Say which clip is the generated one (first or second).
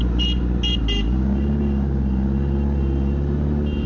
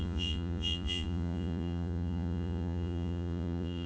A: second